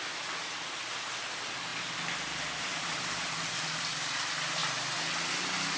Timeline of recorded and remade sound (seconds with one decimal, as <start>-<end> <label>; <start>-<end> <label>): 0.0-5.8 recorded